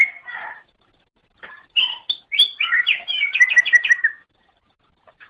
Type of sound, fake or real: real